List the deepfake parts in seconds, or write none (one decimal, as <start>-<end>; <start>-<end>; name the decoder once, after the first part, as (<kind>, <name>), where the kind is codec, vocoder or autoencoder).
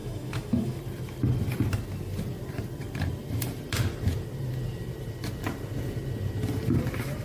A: 0.0-0.8 (autoencoder, DAC-VAE)